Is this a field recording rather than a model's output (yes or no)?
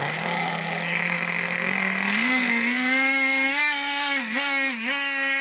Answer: no